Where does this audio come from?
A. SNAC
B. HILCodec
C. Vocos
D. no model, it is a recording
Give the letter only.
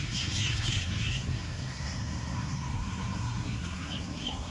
A